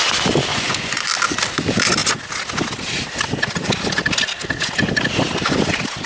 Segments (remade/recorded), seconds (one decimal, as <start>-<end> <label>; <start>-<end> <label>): 0.0-0.5 recorded; 0.5-1.0 remade; 1.0-6.1 recorded